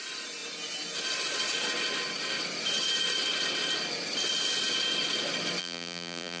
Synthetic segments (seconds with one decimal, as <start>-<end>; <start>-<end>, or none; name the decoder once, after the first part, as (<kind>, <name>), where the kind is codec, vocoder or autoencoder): 5.6-6.4 (vocoder, BigVGAN v2)